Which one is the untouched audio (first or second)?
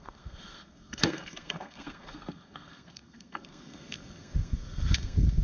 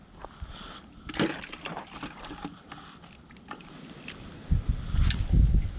second